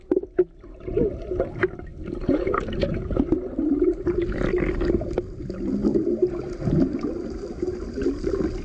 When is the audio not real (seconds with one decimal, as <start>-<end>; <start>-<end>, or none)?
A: none